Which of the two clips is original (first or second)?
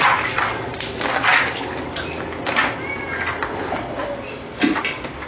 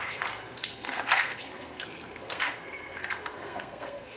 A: first